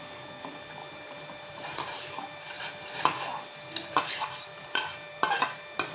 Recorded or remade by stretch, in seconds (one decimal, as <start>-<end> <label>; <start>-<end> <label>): 0.0-0.8 recorded; 0.8-2.7 remade; 2.7-5.9 recorded